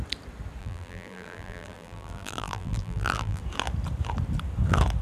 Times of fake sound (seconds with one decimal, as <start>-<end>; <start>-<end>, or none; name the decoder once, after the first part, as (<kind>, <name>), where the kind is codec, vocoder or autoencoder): 0.6-3.4 (vocoder, BigVGAN v2)